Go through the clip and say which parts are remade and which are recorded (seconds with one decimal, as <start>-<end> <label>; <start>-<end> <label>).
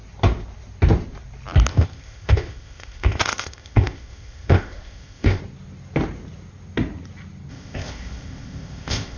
0.0-1.7 recorded; 1.7-5.4 remade; 5.4-7.5 recorded; 7.5-9.2 remade